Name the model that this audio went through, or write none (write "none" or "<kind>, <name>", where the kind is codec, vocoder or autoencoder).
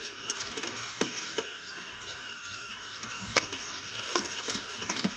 codec, DAC